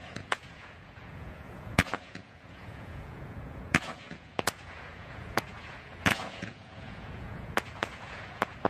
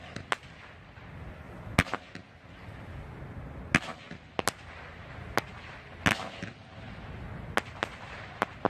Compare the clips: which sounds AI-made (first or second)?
first